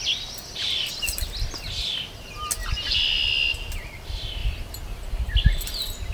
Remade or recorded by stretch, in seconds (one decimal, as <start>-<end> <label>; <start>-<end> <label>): 0.0-6.1 recorded